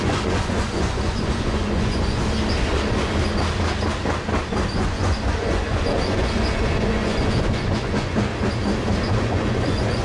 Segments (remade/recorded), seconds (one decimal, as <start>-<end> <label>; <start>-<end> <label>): 0.0-2.2 remade; 2.2-4.7 recorded; 4.7-8.3 remade; 8.3-9.0 recorded; 9.0-10.0 remade